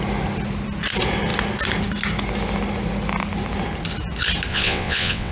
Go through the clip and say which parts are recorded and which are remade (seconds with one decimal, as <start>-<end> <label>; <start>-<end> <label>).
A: 0.0-4.5 recorded; 4.5-5.3 remade